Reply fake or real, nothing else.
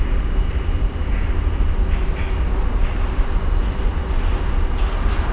real